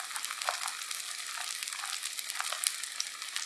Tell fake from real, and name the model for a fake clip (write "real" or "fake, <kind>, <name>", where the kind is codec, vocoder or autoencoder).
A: real